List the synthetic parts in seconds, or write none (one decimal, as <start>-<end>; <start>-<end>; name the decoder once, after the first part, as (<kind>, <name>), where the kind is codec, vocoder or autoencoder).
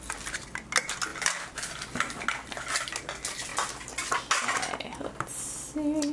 none